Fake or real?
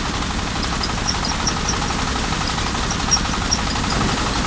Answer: real